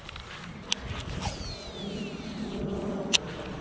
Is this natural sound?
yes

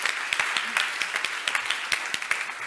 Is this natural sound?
yes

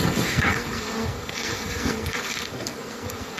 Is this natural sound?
no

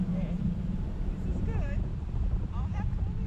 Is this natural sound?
no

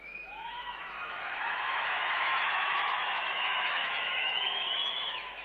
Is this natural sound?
no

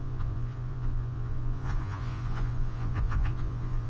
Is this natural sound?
no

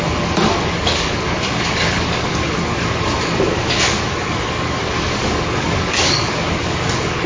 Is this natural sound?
no